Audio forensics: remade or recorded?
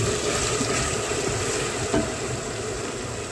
recorded